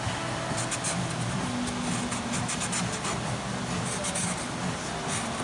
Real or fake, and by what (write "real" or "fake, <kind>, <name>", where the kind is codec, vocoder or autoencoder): real